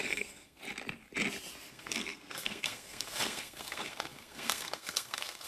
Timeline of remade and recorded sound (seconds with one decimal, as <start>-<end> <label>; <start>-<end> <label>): 0.0-0.6 remade; 0.6-1.7 recorded; 1.7-5.5 remade